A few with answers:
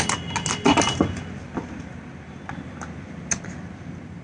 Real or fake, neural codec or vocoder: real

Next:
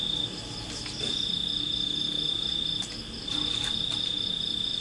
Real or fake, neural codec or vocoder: real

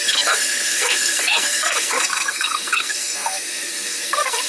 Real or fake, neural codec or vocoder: fake, codec, SNAC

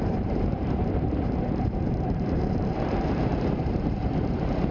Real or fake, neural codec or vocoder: fake, vocoder, BigVGAN v2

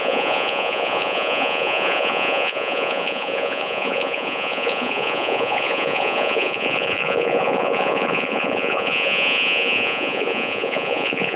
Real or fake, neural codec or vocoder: fake, vocoder, Vocos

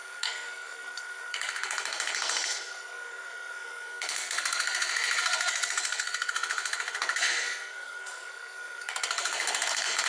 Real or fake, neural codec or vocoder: fake, codec, SNAC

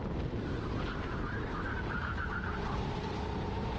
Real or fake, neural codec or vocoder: fake, vocoder, BigVGAN v2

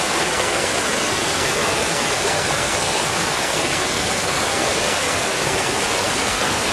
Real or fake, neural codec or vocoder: fake, codec, SNAC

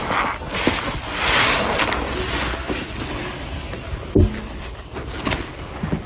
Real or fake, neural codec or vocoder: real